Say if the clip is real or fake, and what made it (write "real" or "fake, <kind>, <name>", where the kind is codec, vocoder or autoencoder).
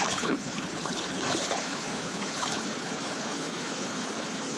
fake, codec, HILCodec